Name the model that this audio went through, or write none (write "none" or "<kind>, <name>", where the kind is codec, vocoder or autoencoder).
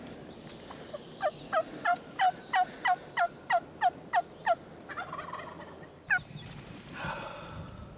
none